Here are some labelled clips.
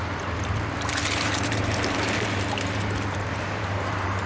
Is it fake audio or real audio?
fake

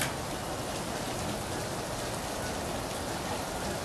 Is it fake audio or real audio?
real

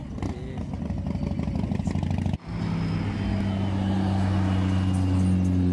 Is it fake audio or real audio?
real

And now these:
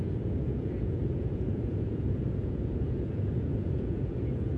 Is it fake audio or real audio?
fake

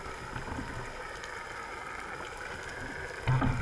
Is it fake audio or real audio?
real